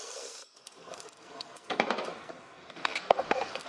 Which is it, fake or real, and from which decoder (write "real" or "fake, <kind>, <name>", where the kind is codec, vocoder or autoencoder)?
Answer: fake, codec, SNAC